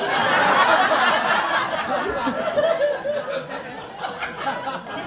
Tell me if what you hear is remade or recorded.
recorded